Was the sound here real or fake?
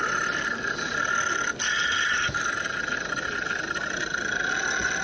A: real